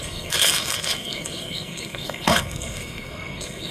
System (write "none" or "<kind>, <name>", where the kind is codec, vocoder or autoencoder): codec, SNAC